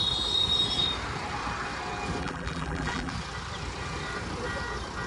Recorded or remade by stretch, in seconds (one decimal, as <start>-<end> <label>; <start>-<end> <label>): 0.0-2.2 recorded; 2.2-3.1 remade; 3.1-5.1 recorded